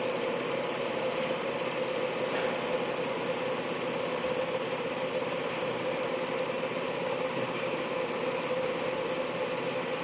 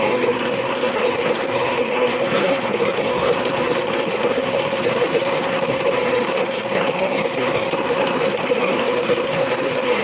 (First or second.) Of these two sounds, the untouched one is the first